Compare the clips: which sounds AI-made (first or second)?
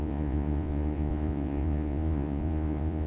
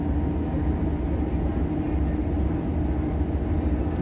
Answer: first